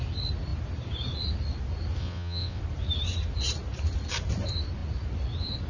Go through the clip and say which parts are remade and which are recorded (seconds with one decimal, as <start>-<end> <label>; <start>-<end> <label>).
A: 0.0-2.0 recorded; 2.0-2.6 remade; 2.6-5.7 recorded